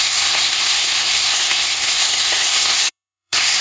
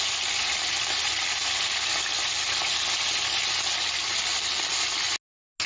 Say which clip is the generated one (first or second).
first